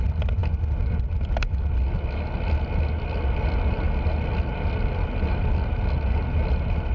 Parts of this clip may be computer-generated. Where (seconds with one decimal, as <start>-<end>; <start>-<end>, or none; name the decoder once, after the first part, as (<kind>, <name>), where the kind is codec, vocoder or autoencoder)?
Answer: none